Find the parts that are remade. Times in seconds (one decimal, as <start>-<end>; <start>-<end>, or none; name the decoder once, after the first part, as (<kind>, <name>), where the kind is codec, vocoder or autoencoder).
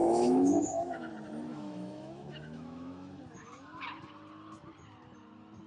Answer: 0.0-1.1 (autoencoder, DAC-VAE); 1.5-3.2